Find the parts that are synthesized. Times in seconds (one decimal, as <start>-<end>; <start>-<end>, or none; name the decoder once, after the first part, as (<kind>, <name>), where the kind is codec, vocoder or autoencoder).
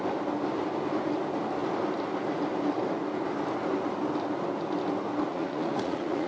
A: 5.3-6.3 (vocoder, Vocos)